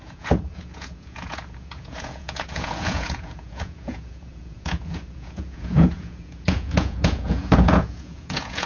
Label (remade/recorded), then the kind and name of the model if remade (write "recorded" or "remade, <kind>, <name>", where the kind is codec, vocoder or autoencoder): remade, vocoder, Vocos